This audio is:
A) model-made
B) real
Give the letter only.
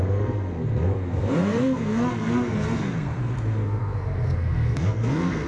A